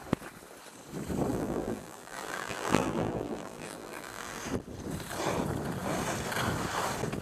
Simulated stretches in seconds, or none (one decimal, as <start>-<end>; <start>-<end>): 1.3-4.4